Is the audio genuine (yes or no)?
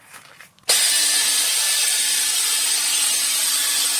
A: yes